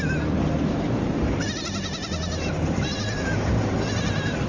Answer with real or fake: fake